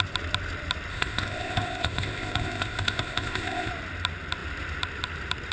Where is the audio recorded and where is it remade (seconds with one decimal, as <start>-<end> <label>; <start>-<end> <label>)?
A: 0.0-0.9 recorded; 0.9-3.7 remade; 3.7-5.5 recorded